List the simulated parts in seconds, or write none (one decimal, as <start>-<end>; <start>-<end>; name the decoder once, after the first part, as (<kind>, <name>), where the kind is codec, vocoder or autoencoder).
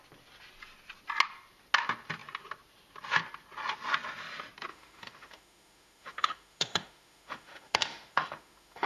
4.7-8.9 (autoencoder, DAC-VAE)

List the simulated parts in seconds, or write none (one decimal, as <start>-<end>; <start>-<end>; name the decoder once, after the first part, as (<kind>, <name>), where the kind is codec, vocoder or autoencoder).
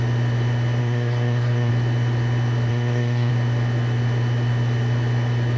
0.8-1.7 (codec, SNAC); 2.7-3.3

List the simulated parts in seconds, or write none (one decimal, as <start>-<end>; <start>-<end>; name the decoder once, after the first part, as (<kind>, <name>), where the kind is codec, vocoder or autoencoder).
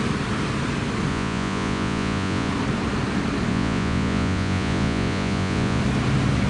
1.1-2.5 (vocoder, Vocos); 3.5-5.8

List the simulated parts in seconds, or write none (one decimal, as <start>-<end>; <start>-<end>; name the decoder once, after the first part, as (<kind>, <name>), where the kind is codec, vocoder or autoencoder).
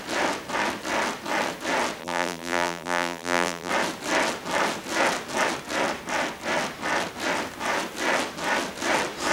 2.0-3.7 (vocoder, BigVGAN v2)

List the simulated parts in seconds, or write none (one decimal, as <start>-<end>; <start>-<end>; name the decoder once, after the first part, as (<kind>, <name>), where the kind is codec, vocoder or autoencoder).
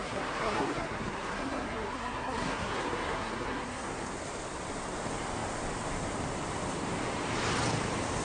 0.0-4.1 (codec, SNAC)